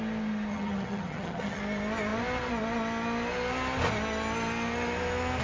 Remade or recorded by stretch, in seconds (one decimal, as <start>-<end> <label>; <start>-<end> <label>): 0.0-0.5 recorded; 0.5-1.6 remade; 1.6-5.4 recorded